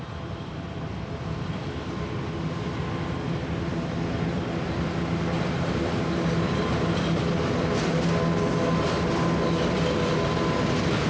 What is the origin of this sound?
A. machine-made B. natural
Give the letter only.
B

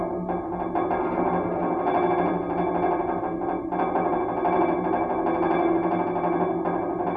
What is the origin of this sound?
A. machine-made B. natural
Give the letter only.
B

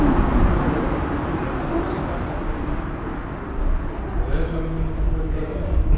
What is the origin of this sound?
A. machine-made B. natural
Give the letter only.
B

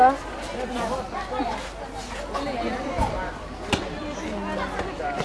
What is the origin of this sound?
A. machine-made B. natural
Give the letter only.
B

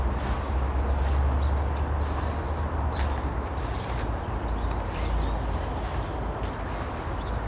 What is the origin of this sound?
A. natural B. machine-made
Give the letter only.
A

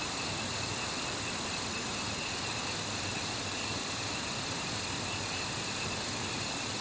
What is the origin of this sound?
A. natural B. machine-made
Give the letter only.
A